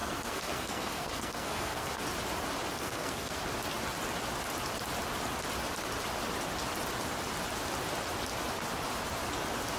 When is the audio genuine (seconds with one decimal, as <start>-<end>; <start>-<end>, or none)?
2.0-2.7; 3.4-9.8